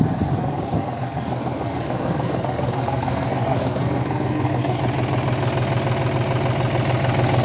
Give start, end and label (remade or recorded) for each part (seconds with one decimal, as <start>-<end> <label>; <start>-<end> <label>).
0.0-0.4 recorded; 0.4-4.8 remade; 4.8-7.4 recorded